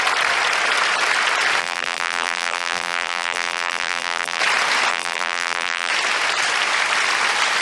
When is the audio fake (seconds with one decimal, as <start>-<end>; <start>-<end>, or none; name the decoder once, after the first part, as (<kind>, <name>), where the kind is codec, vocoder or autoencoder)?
1.6-4.4 (vocoder, BigVGAN v2); 4.9-5.9